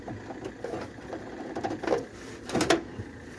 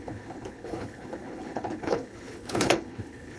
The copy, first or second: second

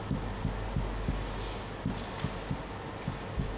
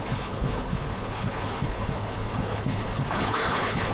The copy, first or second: second